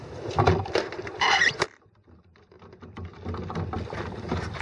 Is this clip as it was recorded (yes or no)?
yes